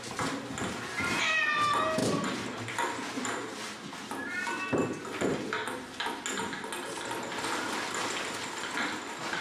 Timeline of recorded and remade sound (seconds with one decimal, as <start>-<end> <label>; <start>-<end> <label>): 0.0-9.4 recorded